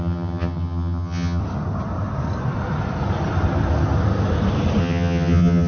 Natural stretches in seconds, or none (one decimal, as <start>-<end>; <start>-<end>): 1.4-4.8